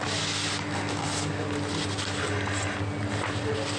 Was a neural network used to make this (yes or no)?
no